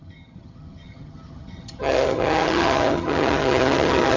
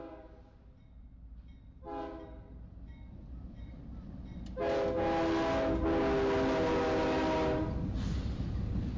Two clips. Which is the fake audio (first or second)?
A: first